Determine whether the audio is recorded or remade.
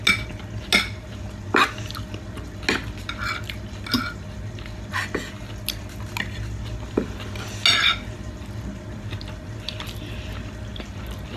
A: recorded